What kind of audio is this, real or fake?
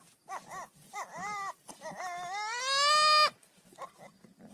real